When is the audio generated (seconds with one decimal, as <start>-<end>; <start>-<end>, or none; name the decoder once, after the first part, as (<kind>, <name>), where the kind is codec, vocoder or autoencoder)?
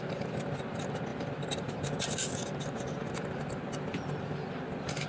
none